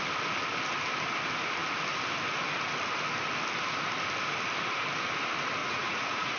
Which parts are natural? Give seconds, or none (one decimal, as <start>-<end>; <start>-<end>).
0.0-5.6